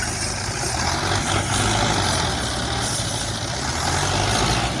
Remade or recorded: recorded